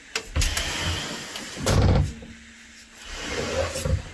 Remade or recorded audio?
recorded